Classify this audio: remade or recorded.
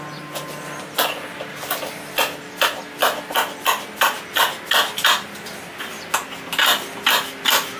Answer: recorded